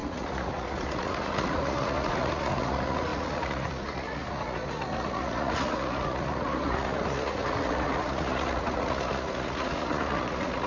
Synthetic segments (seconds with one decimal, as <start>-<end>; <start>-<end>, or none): 0.0-10.7